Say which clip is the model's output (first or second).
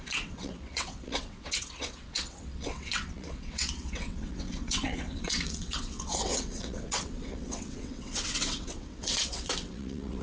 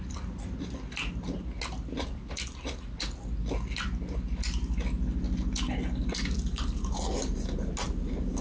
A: first